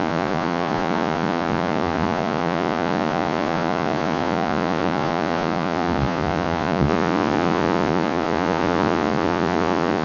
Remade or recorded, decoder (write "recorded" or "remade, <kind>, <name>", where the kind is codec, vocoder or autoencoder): remade, vocoder, Vocos